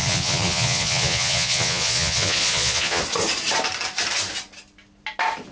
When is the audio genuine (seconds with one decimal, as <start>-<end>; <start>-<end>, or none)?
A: 3.0-5.5